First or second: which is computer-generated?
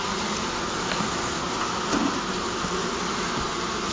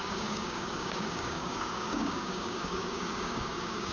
second